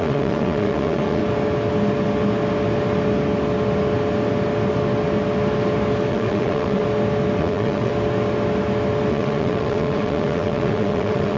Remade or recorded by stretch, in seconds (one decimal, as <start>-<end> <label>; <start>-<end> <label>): 0.0-1.2 remade; 1.2-6.1 recorded; 6.1-6.8 remade; 6.8-7.4 recorded; 7.4-7.9 remade; 7.9-9.1 recorded; 9.1-11.4 remade